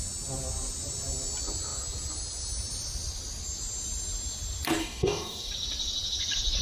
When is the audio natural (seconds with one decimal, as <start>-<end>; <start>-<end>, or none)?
0.0-4.8; 5.5-6.6